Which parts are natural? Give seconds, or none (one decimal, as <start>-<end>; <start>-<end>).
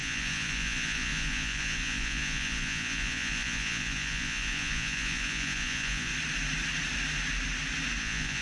6.1-8.0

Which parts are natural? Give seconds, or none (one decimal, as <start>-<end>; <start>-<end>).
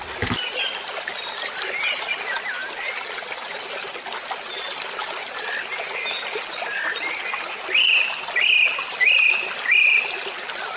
0.0-10.8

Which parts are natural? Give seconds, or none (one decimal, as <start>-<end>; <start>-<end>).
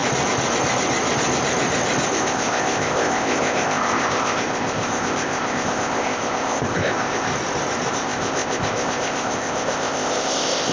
0.0-2.1; 7.3-7.9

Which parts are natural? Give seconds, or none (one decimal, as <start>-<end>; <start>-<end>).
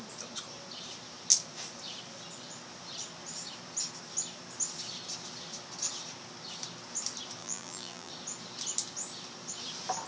0.0-7.4; 8.1-10.1